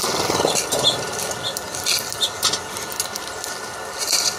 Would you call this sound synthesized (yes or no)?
no